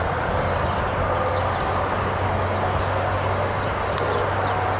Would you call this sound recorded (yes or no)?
yes